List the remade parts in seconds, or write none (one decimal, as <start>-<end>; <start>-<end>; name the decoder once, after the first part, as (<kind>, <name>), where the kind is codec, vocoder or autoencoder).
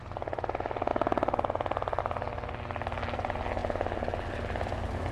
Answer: none